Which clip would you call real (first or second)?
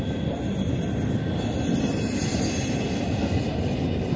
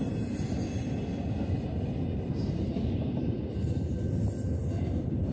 second